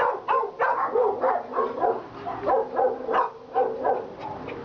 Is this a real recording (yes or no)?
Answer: yes